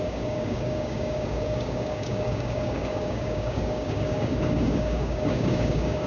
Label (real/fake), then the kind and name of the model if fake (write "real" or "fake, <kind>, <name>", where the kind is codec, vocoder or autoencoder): fake, codec, DAC